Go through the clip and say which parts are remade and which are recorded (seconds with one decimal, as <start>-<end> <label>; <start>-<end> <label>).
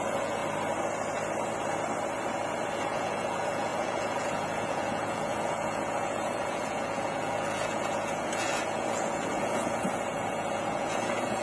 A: 0.0-0.4 remade; 0.4-2.7 recorded; 2.7-11.4 remade